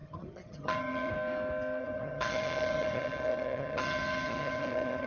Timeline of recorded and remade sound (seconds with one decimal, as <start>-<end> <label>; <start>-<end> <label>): 0.0-1.1 remade; 1.1-1.8 recorded; 1.8-5.1 remade